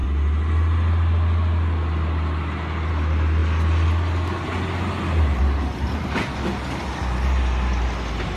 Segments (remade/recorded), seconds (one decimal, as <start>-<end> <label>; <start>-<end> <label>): 0.0-8.4 recorded